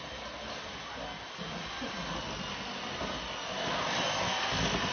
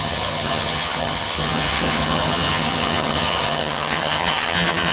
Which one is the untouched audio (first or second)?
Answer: first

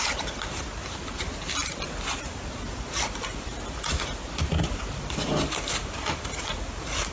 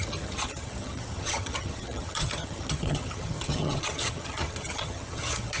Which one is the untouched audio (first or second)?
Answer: first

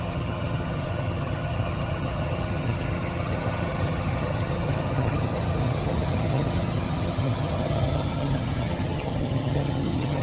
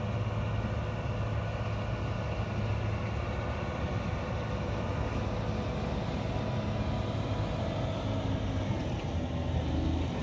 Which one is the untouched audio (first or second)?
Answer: second